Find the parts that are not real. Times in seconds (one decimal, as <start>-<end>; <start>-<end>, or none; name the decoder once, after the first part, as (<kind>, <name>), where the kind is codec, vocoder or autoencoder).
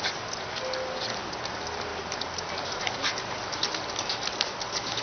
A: none